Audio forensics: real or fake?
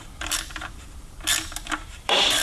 fake